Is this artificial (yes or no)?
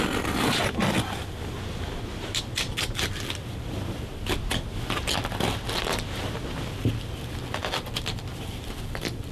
no